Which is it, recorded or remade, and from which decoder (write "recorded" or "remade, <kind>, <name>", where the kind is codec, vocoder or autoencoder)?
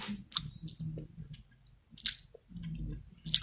recorded